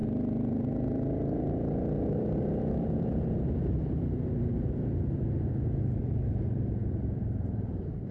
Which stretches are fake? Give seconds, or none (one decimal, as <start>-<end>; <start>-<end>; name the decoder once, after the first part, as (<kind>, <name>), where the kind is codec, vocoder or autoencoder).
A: 2.1-8.1 (vocoder, BigVGAN v2)